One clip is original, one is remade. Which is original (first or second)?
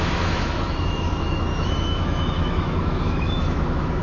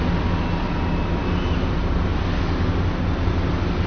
second